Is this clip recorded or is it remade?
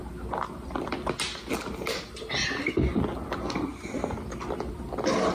recorded